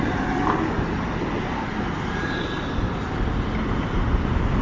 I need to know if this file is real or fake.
real